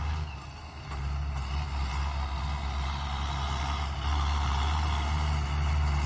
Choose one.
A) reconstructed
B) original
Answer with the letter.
B